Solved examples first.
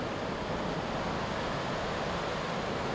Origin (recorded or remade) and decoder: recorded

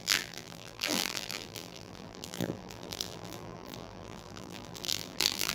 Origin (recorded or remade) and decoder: remade, vocoder, BigVGAN v2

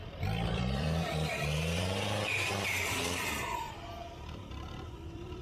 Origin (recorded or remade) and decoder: remade, vocoder, BigVGAN v2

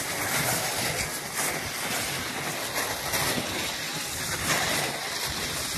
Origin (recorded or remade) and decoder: recorded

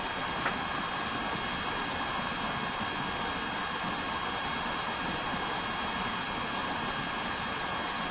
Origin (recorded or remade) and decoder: recorded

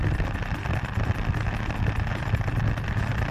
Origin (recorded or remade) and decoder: recorded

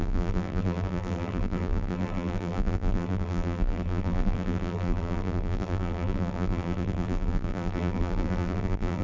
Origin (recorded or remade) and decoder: remade, vocoder, BigVGAN v2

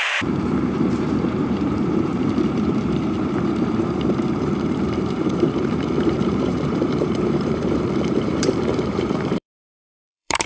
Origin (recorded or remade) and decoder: remade, vocoder, BigVGAN v2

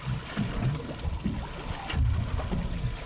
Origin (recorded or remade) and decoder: recorded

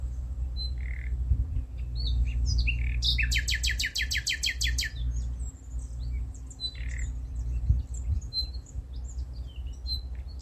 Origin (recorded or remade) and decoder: recorded